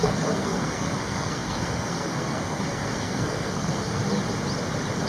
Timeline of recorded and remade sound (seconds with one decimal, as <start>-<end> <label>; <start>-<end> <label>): 0.0-4.0 remade; 4.0-5.1 recorded